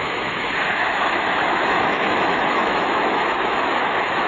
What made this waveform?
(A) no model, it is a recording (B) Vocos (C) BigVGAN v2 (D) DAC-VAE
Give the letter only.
D